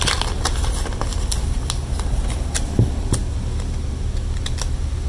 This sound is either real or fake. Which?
real